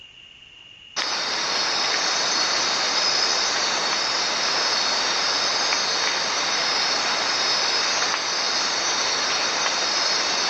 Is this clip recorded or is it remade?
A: recorded